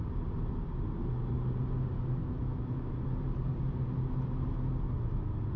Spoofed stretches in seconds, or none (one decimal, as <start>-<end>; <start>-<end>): 2.2-2.9